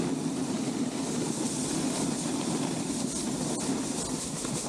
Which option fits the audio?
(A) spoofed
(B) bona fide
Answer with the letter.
B